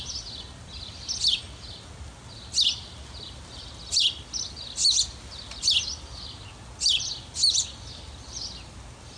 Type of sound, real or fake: real